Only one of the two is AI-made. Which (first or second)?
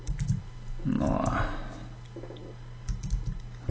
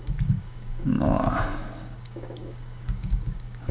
second